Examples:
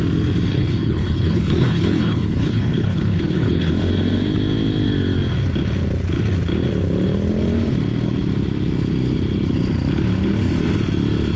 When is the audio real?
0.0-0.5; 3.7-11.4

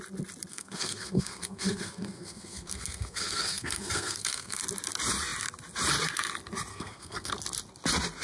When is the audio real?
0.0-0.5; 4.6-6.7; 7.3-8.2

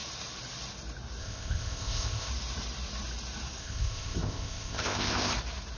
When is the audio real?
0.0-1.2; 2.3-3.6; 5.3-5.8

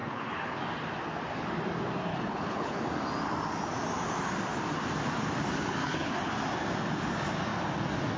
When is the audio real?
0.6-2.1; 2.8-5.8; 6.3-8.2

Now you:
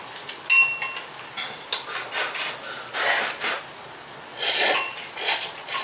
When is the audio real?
0.0-4.3

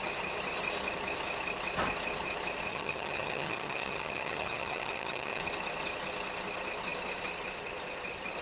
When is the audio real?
0.0-2.7; 5.4-8.4